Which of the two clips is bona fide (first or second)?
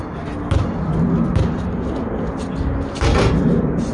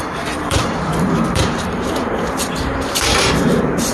first